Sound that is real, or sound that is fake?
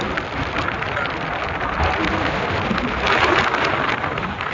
real